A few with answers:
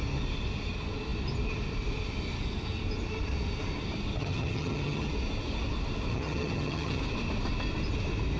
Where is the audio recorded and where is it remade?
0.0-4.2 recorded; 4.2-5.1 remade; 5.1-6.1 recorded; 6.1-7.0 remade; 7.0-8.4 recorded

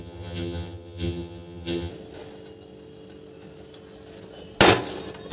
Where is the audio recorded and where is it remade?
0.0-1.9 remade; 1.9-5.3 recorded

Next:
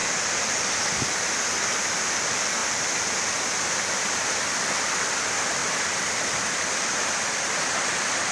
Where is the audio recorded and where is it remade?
0.0-0.5 remade; 0.5-8.3 recorded

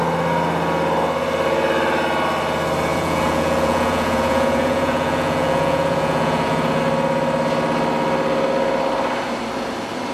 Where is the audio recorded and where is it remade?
0.0-2.9 recorded; 2.9-6.8 remade; 6.8-10.1 recorded

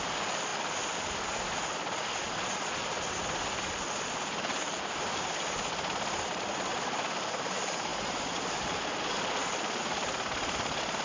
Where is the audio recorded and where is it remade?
0.0-11.0 recorded